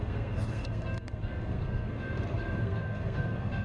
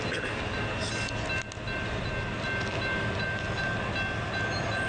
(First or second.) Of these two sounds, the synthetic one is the first